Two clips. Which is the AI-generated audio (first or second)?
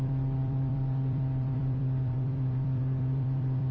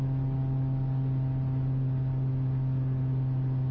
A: first